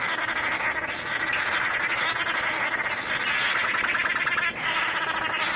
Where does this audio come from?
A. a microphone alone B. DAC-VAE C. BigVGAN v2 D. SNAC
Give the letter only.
A